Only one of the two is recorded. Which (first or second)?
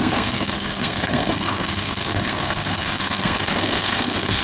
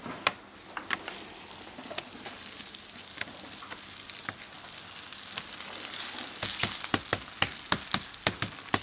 second